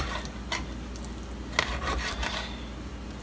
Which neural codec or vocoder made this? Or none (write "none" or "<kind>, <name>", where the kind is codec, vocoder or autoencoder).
none